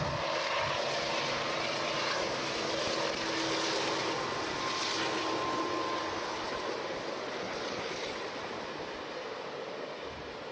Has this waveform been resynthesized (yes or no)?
no